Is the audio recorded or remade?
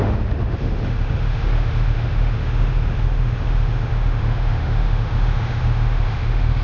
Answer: remade